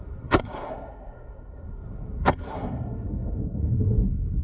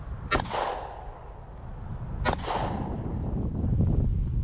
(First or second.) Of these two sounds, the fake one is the first